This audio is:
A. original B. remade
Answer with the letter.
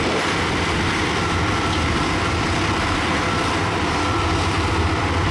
B